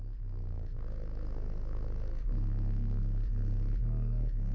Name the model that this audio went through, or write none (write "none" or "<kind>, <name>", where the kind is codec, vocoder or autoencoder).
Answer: codec, SNAC